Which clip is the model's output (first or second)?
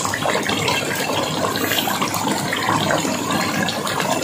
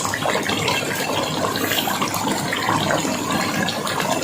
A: first